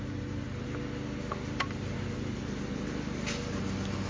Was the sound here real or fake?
real